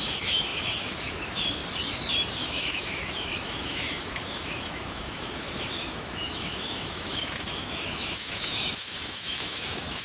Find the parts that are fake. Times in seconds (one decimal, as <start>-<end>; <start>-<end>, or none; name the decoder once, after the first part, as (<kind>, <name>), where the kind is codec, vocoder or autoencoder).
0.0-1.6 (autoencoder, DAC-VAE); 2.4-10.0